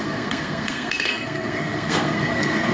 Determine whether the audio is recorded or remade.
remade